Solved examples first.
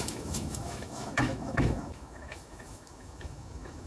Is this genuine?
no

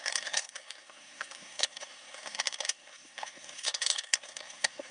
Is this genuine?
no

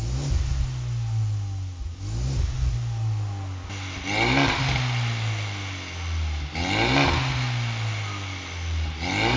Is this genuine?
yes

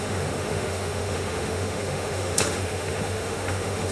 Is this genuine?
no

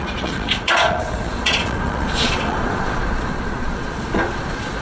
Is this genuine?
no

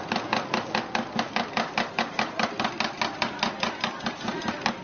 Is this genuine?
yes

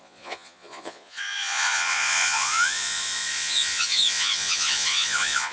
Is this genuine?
no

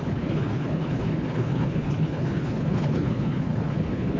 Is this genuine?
no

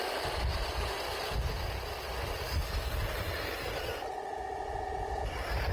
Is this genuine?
yes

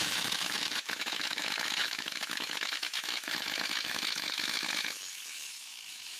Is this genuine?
no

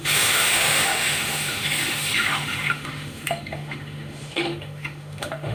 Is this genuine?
no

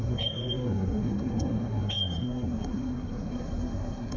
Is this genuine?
no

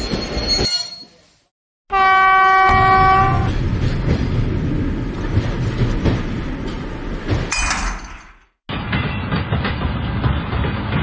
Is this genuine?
yes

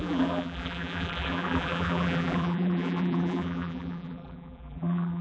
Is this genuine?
no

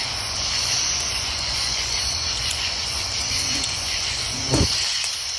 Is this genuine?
no